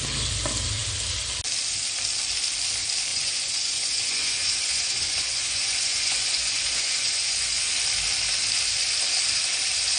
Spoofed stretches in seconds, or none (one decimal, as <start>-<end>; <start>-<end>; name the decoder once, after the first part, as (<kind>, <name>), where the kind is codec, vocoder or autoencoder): 3.1-7.7 (vocoder, Vocos)